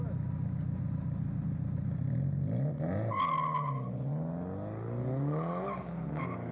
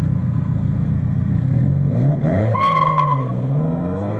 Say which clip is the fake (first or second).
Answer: second